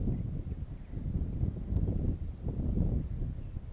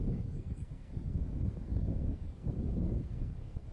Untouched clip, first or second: first